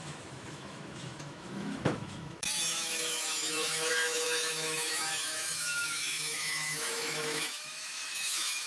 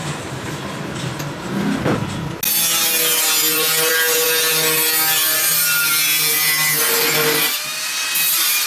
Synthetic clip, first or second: first